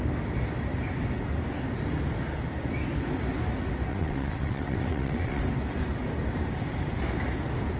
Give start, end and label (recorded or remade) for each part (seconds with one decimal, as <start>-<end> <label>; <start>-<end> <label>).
0.0-3.9 recorded; 3.9-5.4 remade; 5.4-7.8 recorded